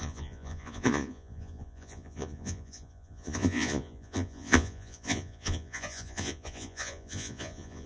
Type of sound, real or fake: fake